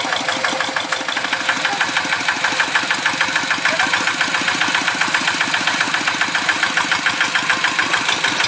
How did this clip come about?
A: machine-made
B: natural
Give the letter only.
B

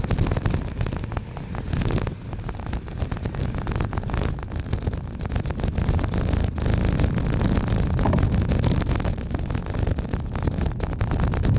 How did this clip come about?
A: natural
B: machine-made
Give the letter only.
A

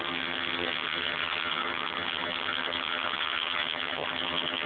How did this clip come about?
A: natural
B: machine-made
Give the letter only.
B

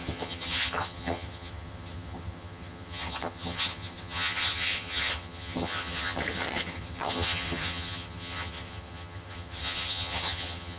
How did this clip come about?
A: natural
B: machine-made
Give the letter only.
B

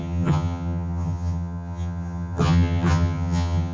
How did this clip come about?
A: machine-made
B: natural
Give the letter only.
A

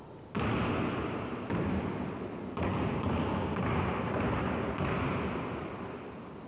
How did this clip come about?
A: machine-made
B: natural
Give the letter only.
B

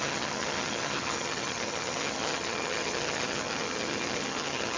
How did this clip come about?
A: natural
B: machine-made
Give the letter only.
B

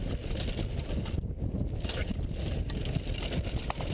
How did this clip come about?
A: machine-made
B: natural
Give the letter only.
B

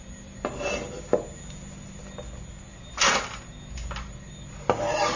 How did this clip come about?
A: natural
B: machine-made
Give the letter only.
A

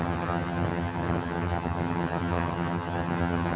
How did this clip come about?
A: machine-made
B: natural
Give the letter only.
A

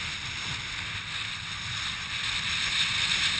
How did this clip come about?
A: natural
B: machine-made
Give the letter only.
A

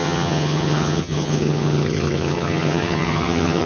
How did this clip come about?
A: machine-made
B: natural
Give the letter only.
A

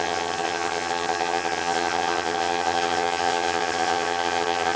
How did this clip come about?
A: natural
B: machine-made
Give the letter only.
B